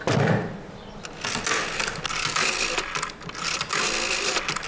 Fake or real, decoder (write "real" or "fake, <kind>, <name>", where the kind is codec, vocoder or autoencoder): real